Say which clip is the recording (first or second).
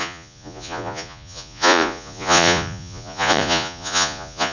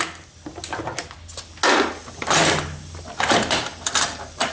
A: second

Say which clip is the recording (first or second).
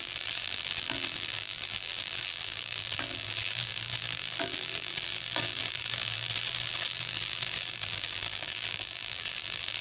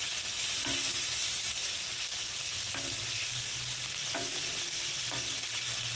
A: second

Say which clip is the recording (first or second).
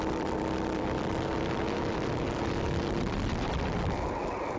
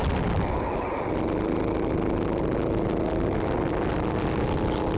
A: second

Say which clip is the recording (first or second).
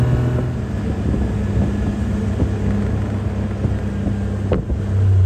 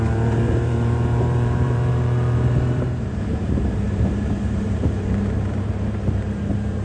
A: first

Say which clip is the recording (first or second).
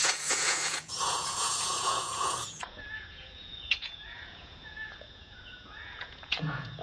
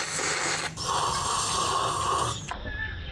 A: second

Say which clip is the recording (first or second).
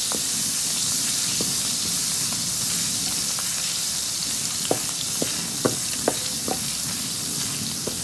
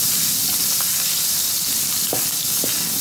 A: first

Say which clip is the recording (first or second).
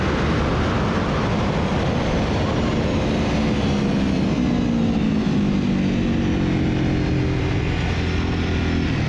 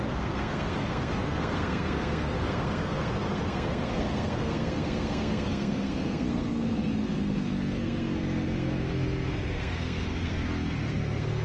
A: first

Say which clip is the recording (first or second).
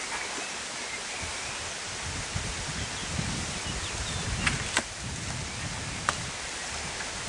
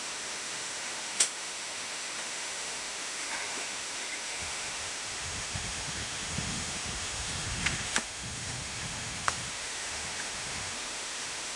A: first